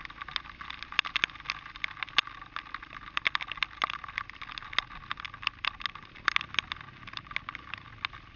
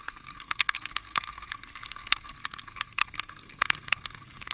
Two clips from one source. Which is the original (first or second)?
first